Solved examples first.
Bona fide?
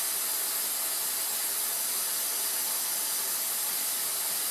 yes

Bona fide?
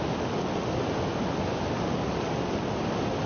yes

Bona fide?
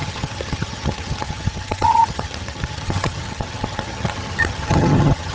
no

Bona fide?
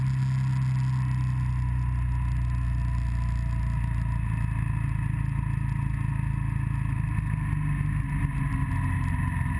yes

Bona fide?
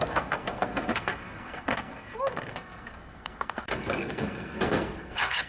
no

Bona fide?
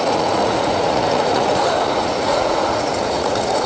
no